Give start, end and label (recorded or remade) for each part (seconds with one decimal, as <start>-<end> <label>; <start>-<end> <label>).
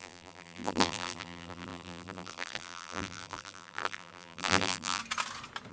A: 0.0-5.0 remade; 5.0-5.7 recorded